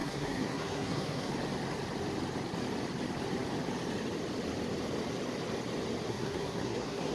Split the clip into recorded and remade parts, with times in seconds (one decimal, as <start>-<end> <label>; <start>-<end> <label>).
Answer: 0.0-1.3 remade; 1.3-6.1 recorded; 6.1-7.1 remade